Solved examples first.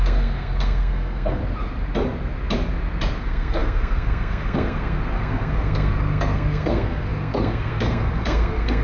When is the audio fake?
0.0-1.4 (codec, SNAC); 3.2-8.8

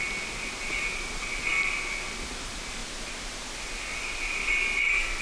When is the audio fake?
none

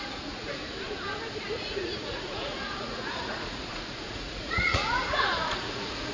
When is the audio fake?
0.0-0.6 (vocoder, Vocos); 1.4-6.1